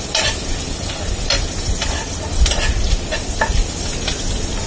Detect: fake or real fake